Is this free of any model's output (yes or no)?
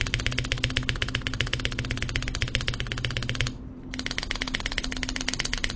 yes